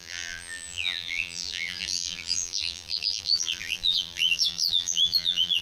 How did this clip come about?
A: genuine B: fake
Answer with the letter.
B